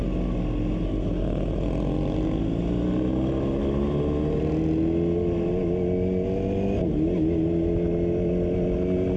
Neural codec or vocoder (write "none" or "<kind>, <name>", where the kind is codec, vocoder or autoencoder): none